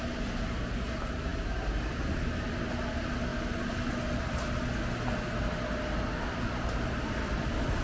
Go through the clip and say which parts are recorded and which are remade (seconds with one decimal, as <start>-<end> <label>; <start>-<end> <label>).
0.0-7.8 recorded